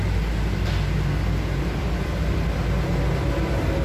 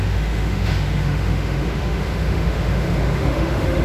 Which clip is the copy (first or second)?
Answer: second